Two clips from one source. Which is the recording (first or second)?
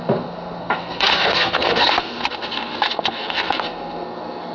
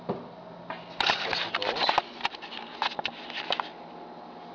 second